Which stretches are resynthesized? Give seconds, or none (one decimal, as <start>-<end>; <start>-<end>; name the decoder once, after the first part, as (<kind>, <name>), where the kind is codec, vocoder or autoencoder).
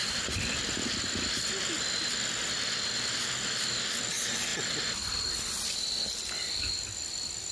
none